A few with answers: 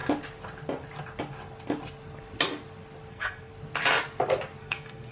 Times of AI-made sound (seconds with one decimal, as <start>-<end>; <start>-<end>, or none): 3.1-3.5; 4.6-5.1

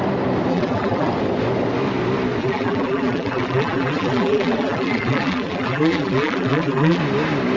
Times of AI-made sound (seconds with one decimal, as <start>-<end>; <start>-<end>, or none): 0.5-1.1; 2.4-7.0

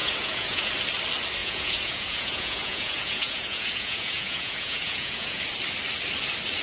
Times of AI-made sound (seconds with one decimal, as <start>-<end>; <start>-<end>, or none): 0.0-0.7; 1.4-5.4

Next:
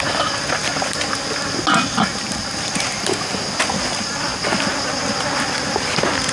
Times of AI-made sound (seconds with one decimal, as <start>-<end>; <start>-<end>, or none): none

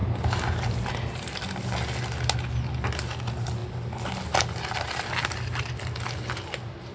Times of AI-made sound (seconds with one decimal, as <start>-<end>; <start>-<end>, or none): none

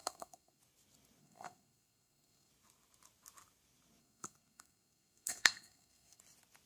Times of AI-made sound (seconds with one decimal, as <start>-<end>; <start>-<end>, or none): 0.0-0.6; 1.2-2.5; 4.0-6.2

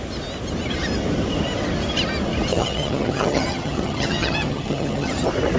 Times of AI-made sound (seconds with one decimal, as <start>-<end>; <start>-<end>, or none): 2.5-5.1

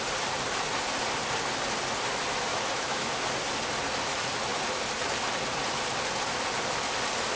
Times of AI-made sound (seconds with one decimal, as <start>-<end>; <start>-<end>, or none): 2.5-3.1